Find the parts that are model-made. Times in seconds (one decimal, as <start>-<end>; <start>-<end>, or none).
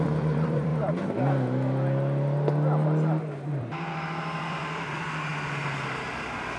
0.0-0.7; 3.3-5.3